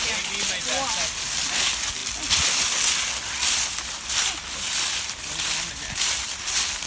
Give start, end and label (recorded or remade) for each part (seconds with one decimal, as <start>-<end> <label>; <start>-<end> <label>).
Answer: 0.0-6.9 recorded